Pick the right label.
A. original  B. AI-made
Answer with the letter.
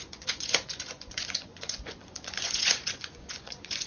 B